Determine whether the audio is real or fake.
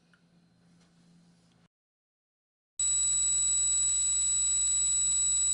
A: real